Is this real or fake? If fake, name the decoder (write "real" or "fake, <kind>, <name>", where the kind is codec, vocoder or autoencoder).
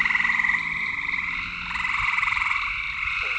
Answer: real